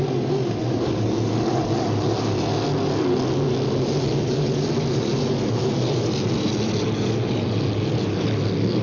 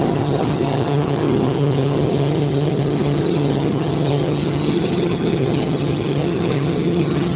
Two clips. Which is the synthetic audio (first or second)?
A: second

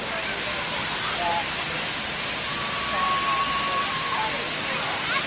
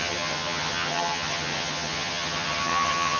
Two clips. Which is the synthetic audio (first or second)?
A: second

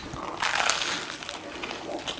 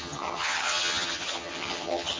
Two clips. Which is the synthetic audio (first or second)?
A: second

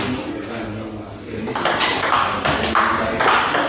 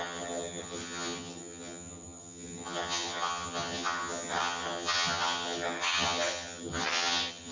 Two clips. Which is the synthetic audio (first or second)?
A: second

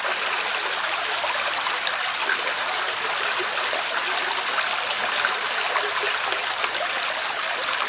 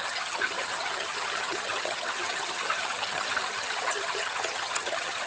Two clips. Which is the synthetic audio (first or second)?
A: second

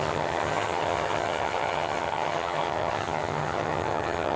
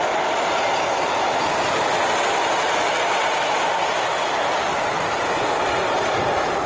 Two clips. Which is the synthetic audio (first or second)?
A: first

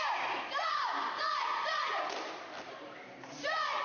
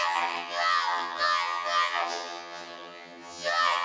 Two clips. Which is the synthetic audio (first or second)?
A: second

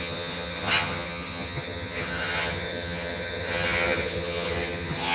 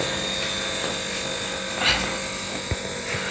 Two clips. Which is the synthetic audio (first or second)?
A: first